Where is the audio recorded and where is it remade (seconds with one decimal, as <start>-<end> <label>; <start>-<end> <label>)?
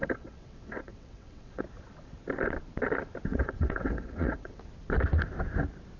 0.0-1.6 remade; 1.6-3.3 recorded; 3.3-4.6 remade; 4.6-6.0 recorded